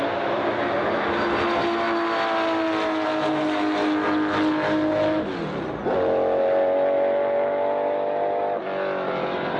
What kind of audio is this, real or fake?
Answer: real